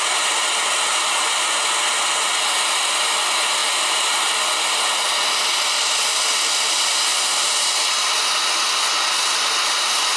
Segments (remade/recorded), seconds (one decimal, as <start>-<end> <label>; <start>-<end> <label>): 0.0-3.6 recorded; 3.6-4.1 remade; 4.1-10.2 recorded